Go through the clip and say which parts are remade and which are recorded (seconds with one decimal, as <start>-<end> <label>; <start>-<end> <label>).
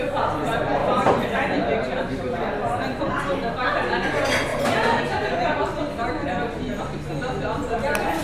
0.0-0.8 recorded; 0.8-3.0 remade; 3.0-4.5 recorded; 4.5-6.8 remade; 6.8-8.2 recorded